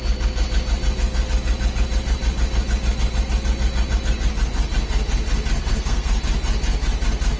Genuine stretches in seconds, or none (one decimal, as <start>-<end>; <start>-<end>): 0.0-5.6; 6.2-7.4